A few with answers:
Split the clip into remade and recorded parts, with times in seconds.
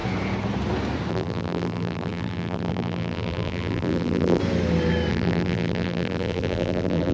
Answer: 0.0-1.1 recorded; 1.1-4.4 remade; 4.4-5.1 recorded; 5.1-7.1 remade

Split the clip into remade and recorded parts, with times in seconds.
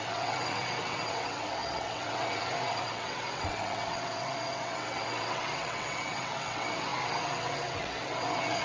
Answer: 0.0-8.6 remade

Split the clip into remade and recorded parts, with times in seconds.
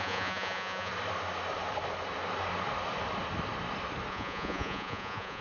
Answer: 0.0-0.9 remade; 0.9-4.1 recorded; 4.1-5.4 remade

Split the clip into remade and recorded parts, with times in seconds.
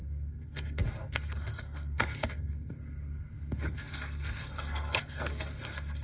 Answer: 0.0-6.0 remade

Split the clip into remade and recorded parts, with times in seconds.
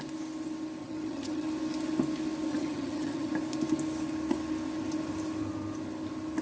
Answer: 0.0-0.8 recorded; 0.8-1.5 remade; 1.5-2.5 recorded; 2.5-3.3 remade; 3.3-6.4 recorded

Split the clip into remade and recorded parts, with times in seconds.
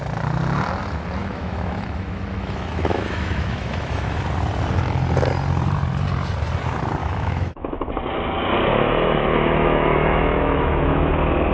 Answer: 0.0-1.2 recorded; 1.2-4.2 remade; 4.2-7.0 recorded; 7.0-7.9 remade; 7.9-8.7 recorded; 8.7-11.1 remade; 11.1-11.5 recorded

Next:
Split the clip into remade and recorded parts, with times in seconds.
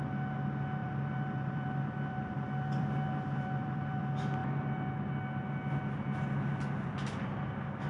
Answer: 0.0-0.8 recorded; 0.8-4.0 remade; 4.0-7.9 recorded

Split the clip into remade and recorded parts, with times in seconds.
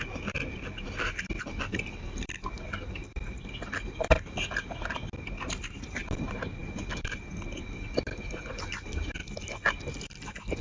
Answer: 0.0-10.6 recorded